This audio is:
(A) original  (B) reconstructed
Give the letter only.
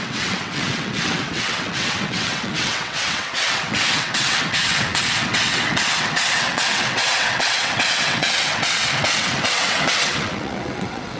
B